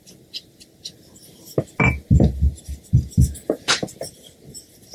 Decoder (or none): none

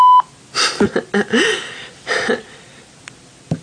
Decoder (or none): none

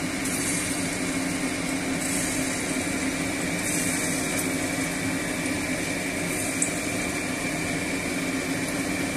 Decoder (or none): none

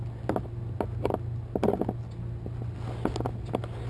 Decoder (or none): none